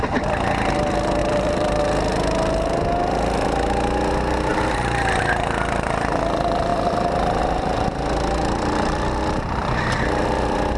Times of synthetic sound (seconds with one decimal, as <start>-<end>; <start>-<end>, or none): 1.2-1.8; 4.5-5.2; 6.7-7.4